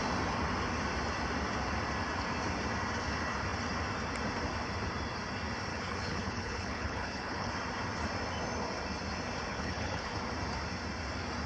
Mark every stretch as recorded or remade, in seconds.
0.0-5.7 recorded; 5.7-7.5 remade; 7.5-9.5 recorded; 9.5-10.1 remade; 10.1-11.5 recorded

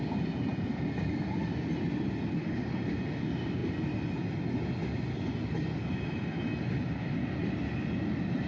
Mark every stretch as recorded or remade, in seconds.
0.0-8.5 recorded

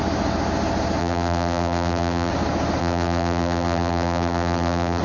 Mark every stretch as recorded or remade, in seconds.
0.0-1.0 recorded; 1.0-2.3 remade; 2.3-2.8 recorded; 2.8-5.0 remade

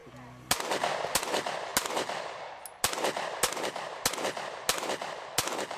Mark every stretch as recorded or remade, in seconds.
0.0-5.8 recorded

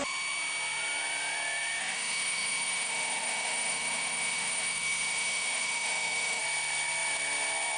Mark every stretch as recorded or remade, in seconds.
0.0-1.8 recorded; 1.8-6.4 remade; 6.4-7.8 recorded